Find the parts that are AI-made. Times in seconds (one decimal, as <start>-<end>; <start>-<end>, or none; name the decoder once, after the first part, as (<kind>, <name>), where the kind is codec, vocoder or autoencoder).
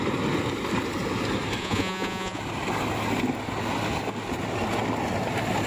1.6-2.4 (vocoder, Vocos)